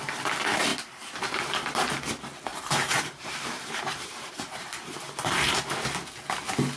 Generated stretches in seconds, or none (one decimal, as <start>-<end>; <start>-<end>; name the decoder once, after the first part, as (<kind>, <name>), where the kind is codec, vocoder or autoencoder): 2.5-5.6 (vocoder, BigVGAN v2)